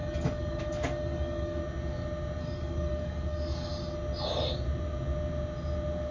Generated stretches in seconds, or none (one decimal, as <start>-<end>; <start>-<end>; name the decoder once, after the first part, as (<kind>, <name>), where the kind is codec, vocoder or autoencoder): 0.0-1.6 (codec, DAC); 2.4-3.7